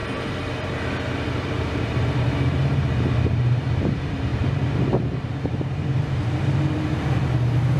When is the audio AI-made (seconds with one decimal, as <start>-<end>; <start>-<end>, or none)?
1.8-7.8